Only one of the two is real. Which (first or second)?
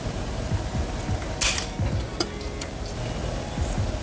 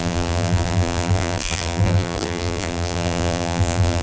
first